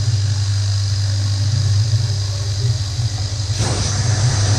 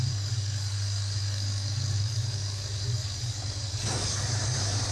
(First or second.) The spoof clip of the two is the second